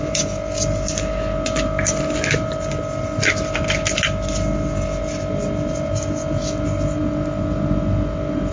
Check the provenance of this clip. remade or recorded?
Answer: recorded